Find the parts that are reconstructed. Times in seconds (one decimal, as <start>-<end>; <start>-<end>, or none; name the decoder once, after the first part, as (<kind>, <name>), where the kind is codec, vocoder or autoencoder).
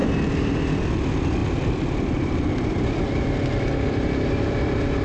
0.0-0.8 (vocoder, BigVGAN v2); 1.4-4.4